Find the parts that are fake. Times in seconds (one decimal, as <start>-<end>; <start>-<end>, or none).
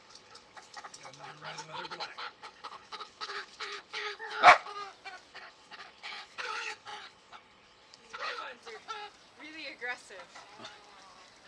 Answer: 0.0-4.7; 5.3-8.6